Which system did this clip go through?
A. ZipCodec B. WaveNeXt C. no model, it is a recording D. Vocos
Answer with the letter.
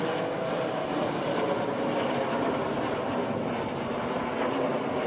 C